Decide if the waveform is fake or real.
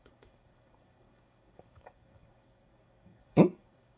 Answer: fake